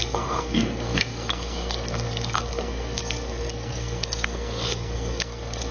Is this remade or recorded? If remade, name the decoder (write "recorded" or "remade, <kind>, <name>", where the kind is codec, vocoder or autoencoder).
remade, codec, SNAC